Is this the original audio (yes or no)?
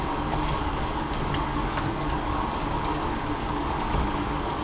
no